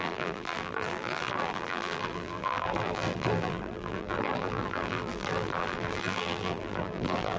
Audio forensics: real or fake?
fake